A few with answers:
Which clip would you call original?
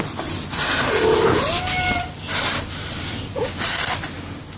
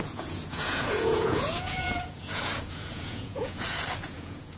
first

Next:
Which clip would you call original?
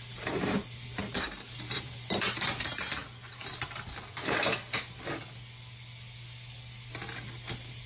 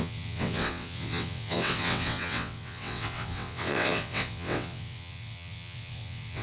first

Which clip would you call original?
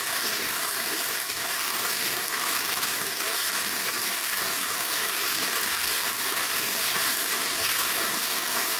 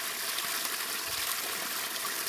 second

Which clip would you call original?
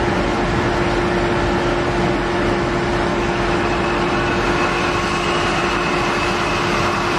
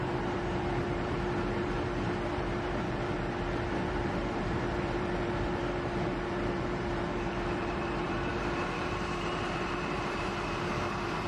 first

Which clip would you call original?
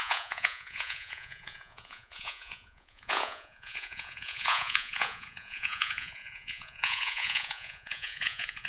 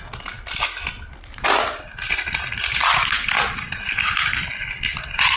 second